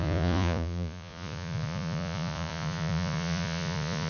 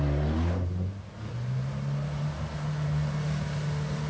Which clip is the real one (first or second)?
second